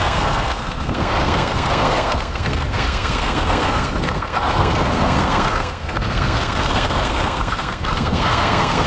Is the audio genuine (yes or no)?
no